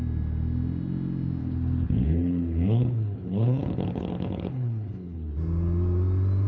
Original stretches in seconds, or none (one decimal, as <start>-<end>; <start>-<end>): 0.0-1.4; 5.3-6.5